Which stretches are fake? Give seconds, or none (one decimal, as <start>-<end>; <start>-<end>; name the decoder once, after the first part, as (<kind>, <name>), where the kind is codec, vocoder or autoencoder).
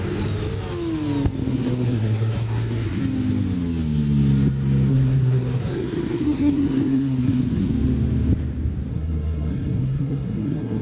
1.5-3.0 (codec, SNAC); 4.9-7.7; 8.9-10.8